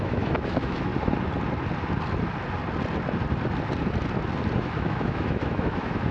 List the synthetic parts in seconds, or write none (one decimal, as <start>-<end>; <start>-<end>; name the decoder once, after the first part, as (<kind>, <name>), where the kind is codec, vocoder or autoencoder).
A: 0.0-0.9 (autoencoder, DAC-VAE); 4.6-6.1